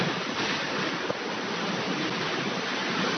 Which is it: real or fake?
real